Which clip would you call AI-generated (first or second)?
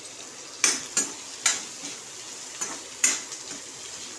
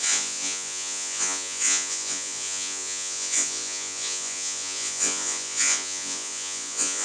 second